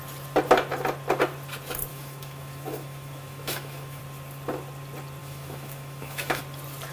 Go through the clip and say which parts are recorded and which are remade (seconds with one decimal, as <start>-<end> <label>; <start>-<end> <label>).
0.0-1.9 recorded; 1.9-4.0 remade; 4.0-5.2 recorded; 5.2-6.4 remade; 6.4-6.9 recorded